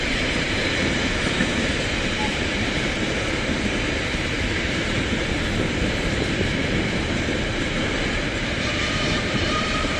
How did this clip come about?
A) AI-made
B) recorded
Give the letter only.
A